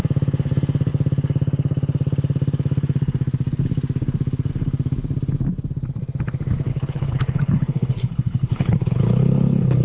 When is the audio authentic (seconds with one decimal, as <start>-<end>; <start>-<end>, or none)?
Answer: 0.0-6.7